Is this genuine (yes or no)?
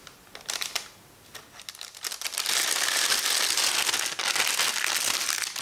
yes